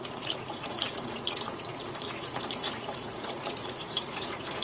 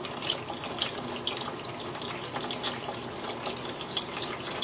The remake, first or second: first